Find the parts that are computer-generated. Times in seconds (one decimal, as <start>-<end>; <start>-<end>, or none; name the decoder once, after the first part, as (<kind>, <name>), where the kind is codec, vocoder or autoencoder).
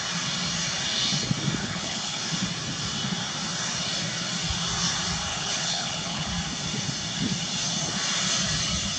1.6-2.2 (codec, HILCodec); 5.3-6.3